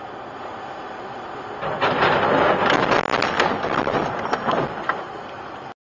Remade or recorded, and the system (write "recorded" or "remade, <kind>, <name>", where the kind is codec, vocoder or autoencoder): recorded